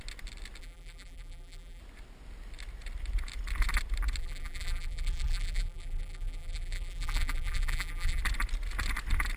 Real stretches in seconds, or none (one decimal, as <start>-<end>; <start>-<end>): 0.0-0.6; 1.8-4.2; 8.2-9.4